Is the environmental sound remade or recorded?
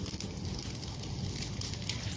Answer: recorded